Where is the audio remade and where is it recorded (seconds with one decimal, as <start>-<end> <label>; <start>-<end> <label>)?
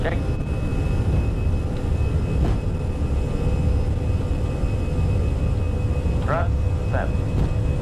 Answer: 0.0-0.7 recorded; 0.7-1.3 remade; 1.3-7.8 recorded